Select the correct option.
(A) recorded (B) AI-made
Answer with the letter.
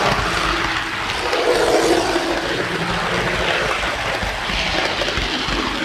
A